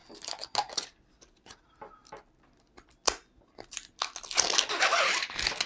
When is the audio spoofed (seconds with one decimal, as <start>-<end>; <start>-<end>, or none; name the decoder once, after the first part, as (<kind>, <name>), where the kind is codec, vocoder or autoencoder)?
none